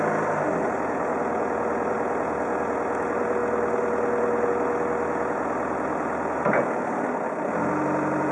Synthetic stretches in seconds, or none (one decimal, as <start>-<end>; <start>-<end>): none